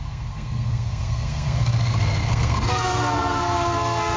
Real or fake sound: fake